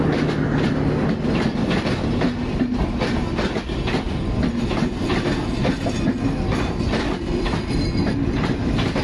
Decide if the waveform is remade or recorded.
recorded